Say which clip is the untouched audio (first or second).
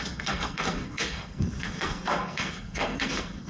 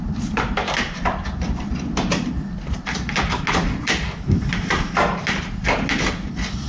second